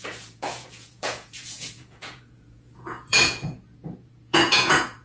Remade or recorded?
remade